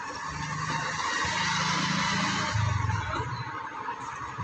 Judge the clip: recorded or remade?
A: recorded